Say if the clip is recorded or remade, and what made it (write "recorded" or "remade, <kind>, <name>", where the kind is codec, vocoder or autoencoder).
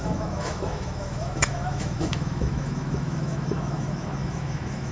remade, autoencoder, DAC-VAE